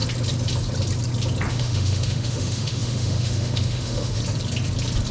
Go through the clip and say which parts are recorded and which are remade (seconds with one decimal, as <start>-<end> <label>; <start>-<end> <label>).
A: 0.0-1.5 recorded; 1.5-4.2 remade; 4.2-5.1 recorded